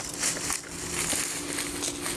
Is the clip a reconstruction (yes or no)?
no